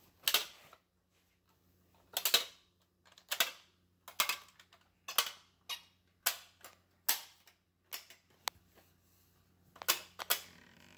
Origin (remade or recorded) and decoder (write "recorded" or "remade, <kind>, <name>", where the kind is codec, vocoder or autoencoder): recorded